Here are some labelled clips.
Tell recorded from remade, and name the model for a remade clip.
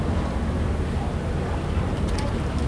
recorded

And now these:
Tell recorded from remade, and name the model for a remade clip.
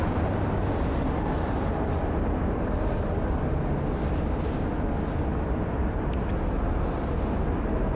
recorded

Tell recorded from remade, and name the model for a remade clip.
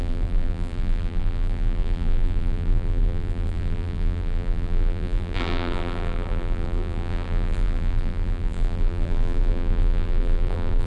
remade, vocoder, BigVGAN v2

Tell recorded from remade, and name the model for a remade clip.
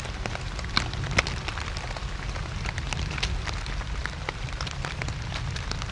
recorded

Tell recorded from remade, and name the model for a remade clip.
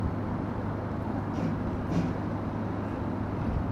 recorded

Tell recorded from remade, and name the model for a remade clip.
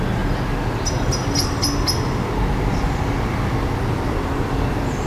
recorded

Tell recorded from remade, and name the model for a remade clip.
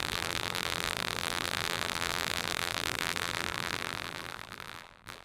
remade, vocoder, BigVGAN v2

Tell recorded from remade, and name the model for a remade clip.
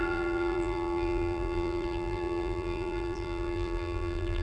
remade, vocoder, BigVGAN v2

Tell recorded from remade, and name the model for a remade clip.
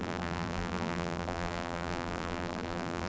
remade, vocoder, BigVGAN v2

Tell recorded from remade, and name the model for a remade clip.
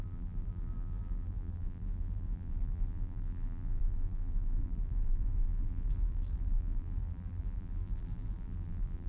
remade, vocoder, BigVGAN v2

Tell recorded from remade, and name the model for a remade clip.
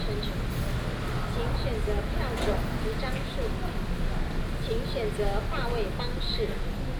recorded